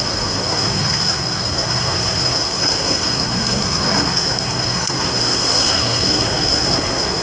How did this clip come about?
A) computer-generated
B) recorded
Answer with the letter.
A